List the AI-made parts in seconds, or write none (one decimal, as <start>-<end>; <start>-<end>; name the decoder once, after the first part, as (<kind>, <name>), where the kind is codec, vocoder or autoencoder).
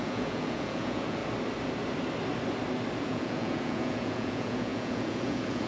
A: 0.0-1.2 (vocoder, Vocos); 3.0-5.7